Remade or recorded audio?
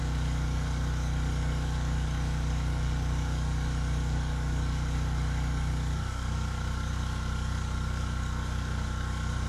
remade